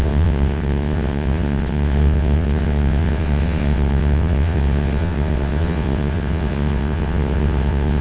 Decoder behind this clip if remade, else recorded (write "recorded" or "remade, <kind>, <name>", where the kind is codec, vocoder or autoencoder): remade, vocoder, WaveNeXt